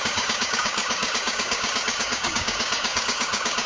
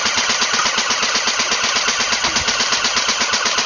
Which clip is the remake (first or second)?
first